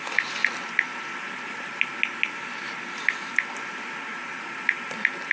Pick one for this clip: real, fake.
real